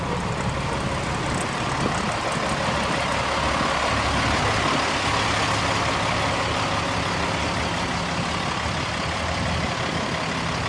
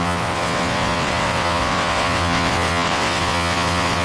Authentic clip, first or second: first